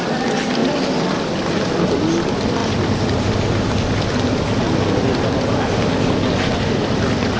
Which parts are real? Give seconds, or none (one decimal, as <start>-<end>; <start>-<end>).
0.0-7.4